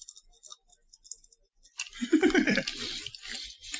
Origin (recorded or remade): recorded